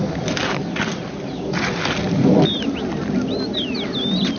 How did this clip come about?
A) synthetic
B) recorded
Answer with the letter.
B